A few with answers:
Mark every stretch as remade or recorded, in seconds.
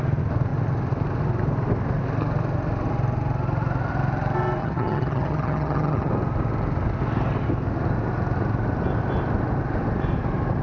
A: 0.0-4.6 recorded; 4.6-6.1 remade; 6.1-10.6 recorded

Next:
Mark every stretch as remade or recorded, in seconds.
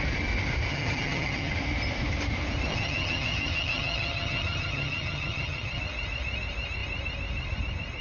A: 0.0-0.7 recorded; 0.7-1.5 remade; 1.5-2.7 recorded; 2.7-5.8 remade; 5.8-8.0 recorded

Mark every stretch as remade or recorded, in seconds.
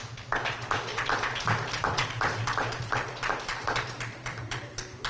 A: 0.0-5.1 recorded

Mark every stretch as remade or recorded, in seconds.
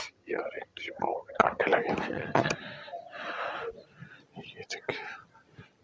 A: 0.0-1.6 remade; 1.6-2.1 recorded; 2.1-2.6 remade; 2.6-5.8 recorded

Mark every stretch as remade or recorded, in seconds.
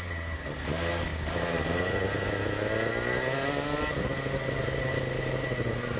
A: 0.0-6.0 recorded